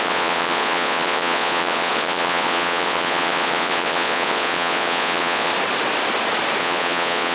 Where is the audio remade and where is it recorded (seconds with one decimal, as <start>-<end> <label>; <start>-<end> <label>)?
0.0-5.5 remade; 5.5-6.6 recorded; 6.6-7.3 remade